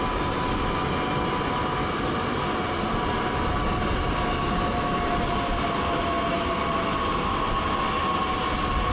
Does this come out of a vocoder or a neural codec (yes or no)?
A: no